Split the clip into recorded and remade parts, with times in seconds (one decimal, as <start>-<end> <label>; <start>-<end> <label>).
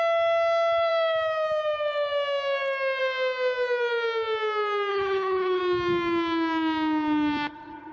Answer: 0.0-4.9 recorded; 4.9-5.6 remade; 5.6-7.9 recorded